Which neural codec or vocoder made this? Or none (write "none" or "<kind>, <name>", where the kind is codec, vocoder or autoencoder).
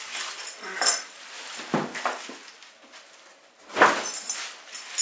none